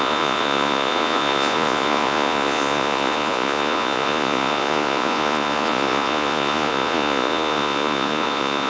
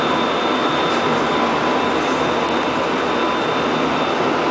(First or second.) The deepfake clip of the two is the first